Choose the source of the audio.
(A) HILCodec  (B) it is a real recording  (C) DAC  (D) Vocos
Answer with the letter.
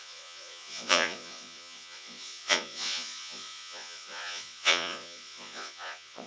D